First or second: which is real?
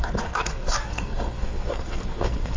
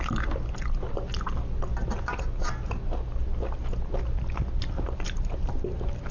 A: second